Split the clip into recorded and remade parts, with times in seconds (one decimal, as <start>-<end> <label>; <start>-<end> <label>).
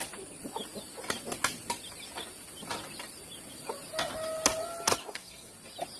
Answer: 0.0-5.0 recorded; 5.0-5.5 remade; 5.5-6.0 recorded